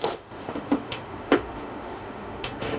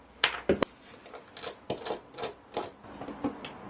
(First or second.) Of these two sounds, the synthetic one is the first